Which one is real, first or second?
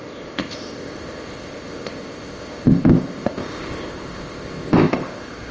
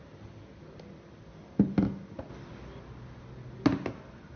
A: second